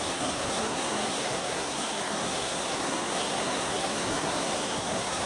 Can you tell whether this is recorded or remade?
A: remade